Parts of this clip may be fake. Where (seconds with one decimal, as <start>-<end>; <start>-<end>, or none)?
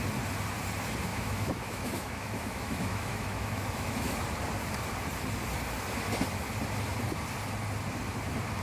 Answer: 1.1-4.2